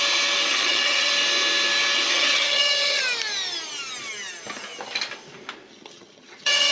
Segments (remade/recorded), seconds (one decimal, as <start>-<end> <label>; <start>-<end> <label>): 0.0-0.5 recorded; 0.5-1.1 remade; 1.1-2.1 recorded; 2.1-3.0 remade; 3.0-5.7 recorded; 5.7-6.7 remade